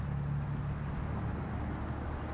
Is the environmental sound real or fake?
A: real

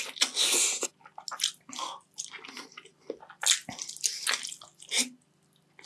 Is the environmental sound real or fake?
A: real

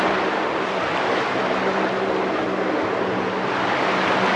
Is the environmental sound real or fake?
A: real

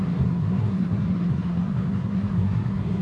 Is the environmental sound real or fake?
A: fake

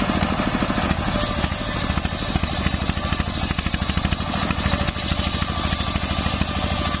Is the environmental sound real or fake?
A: real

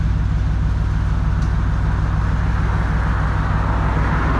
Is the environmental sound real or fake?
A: real